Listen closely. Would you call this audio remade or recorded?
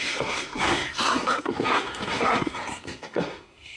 remade